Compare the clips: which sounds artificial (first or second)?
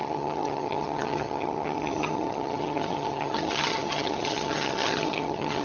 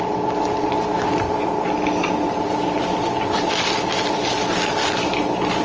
first